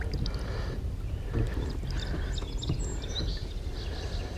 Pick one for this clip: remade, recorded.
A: recorded